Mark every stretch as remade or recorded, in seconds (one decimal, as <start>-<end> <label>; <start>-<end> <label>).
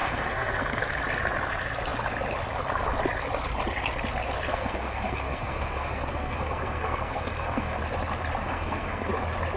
0.0-0.8 remade; 0.8-4.5 recorded; 4.5-7.8 remade; 7.8-8.4 recorded; 8.4-9.1 remade; 9.1-9.6 recorded